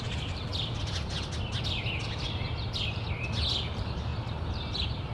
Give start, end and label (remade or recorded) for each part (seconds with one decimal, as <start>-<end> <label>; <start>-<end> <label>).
0.0-0.5 remade; 0.5-3.6 recorded; 3.6-4.1 remade; 4.1-4.6 recorded; 4.6-5.1 remade